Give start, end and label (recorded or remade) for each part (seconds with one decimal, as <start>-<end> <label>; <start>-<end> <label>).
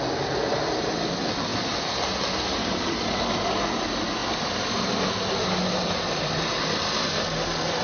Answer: 0.0-7.8 recorded